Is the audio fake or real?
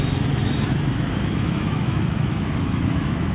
fake